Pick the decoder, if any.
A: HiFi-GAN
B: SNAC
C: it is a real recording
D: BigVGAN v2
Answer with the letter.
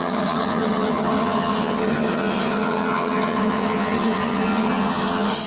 A